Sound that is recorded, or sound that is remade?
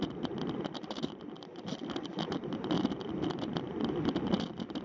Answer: recorded